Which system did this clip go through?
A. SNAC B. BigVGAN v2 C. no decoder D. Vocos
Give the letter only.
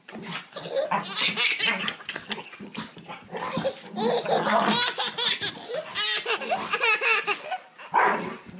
C